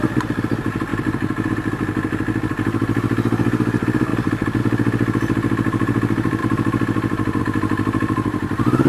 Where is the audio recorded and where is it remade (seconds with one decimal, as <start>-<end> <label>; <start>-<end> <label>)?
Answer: 0.0-8.9 recorded